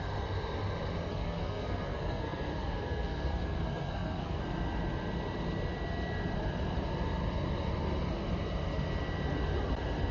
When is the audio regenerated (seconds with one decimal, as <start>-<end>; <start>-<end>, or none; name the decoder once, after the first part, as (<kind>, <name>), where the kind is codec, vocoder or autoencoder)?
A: 1.1-4.4 (codec, SNAC)